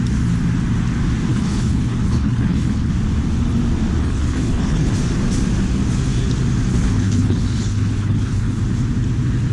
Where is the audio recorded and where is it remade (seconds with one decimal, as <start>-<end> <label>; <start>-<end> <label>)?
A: 0.0-1.3 recorded; 1.3-2.9 remade; 2.9-4.0 recorded; 4.0-4.9 remade; 4.9-6.7 recorded; 6.7-8.6 remade; 8.6-9.5 recorded